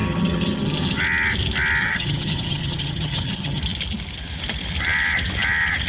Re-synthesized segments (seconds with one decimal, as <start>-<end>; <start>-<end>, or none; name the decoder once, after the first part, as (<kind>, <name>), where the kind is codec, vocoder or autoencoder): 0.0-1.0 (vocoder, HiFi-GAN); 1.8-3.6